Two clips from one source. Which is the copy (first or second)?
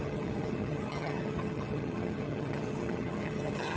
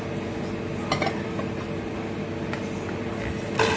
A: first